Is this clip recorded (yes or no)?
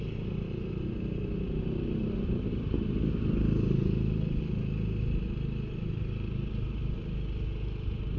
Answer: yes